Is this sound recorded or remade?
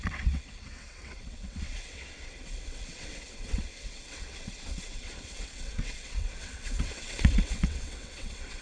remade